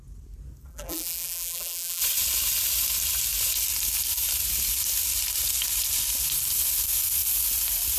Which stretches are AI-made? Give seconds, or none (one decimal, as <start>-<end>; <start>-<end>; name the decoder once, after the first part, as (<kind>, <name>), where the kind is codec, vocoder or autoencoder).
0.7-2.0 (vocoder, BigVGAN v2)